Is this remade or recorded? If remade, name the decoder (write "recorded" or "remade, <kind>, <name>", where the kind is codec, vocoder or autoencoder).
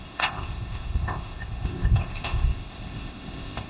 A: remade, codec, ZipCodec